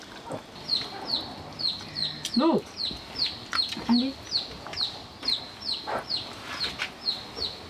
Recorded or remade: recorded